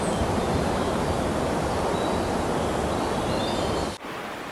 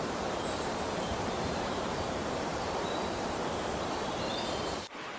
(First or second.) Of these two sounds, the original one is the first